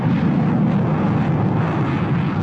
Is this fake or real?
real